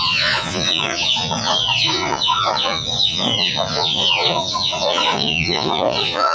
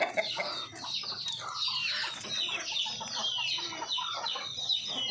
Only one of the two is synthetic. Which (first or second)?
first